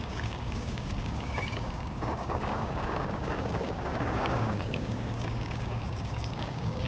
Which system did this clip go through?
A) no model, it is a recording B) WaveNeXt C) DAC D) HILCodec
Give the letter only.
C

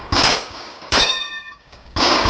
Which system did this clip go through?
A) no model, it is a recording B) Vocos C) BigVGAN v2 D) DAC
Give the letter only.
D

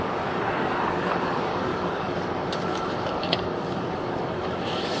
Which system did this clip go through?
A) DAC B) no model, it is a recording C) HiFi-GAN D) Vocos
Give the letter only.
A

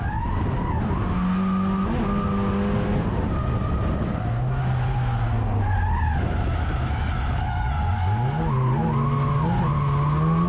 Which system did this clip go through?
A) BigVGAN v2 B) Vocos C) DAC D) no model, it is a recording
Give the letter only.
D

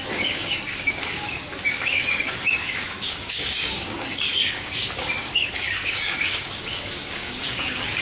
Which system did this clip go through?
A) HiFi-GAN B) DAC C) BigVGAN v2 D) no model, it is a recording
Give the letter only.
B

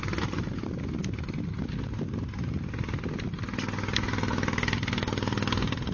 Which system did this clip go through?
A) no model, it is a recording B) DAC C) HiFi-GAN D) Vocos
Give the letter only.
A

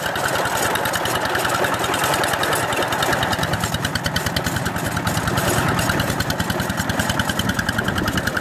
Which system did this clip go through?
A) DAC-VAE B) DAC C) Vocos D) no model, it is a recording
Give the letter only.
D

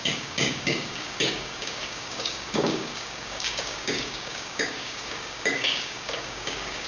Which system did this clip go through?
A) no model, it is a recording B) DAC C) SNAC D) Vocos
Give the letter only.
B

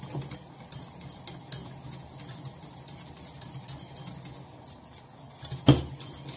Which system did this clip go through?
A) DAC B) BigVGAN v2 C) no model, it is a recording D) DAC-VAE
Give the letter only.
C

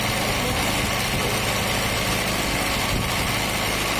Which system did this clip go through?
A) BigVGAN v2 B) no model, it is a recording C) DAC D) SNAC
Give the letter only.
B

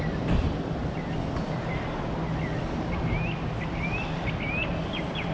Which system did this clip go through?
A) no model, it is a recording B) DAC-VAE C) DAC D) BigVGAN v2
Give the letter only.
A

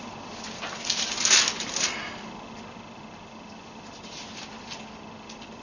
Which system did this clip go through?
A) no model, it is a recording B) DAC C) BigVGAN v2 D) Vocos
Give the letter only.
A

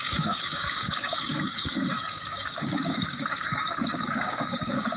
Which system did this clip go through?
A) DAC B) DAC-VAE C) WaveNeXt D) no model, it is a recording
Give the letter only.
A